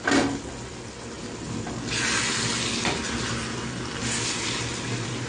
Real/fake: real